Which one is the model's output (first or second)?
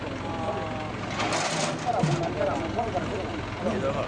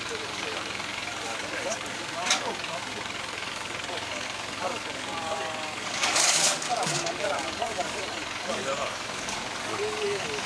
second